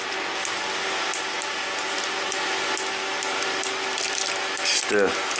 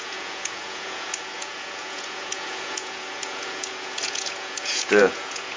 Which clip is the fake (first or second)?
second